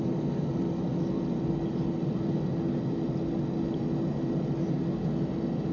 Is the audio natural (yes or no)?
yes